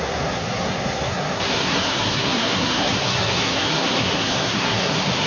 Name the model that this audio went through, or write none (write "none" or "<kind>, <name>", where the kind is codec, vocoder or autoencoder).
codec, SNAC